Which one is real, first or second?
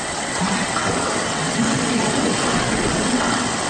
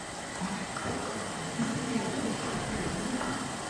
second